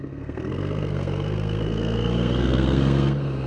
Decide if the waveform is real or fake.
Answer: fake